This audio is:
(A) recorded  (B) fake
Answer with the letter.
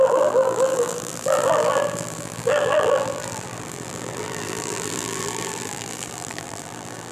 B